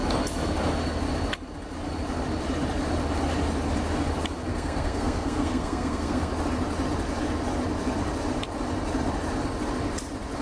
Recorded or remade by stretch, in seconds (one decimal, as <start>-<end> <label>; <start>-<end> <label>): 0.0-4.5 recorded; 4.5-6.3 remade; 6.3-10.4 recorded